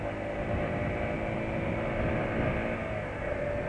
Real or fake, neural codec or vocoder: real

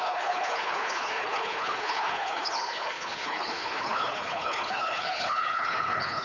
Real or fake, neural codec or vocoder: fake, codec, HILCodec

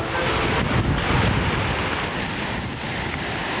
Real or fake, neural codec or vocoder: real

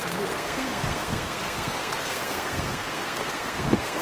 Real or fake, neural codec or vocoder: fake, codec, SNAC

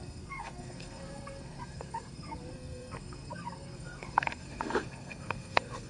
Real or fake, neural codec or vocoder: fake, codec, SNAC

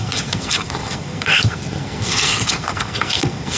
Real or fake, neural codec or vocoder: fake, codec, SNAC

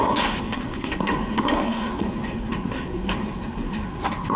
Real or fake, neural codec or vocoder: fake, codec, SNAC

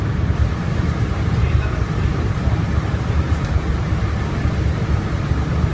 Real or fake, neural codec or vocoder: fake, vocoder, BigVGAN v2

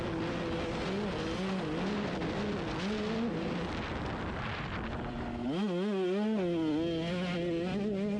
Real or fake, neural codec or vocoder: real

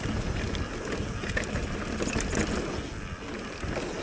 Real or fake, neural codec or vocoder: real